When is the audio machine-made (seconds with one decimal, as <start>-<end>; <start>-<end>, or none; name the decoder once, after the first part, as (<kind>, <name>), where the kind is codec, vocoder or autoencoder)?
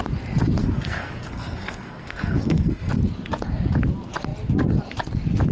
0.6-2.9 (codec, SNAC)